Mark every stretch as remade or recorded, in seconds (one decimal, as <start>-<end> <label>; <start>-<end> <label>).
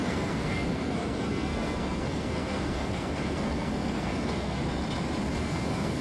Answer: 0.0-4.6 remade; 4.6-5.4 recorded; 5.4-6.0 remade